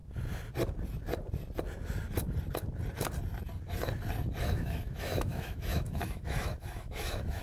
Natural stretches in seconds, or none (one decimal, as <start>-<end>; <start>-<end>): 0.0-4.4